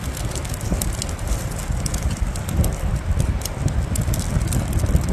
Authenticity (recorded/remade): recorded